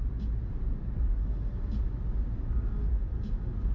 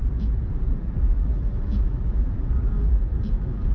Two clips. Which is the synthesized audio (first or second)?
second